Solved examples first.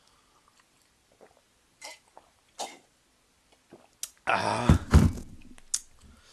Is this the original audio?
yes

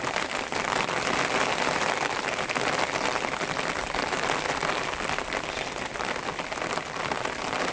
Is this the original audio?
yes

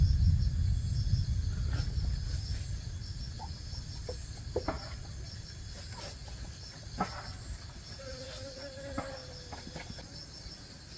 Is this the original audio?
yes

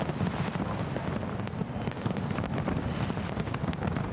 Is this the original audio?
no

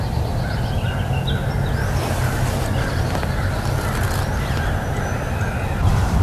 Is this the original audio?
yes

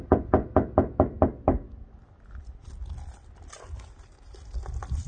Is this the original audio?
yes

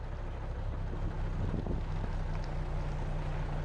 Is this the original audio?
yes